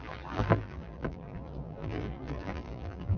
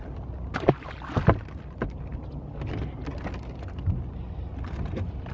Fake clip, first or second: first